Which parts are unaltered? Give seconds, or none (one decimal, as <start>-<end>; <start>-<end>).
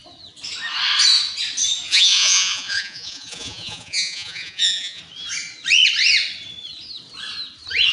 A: 0.0-1.9; 5.0-7.9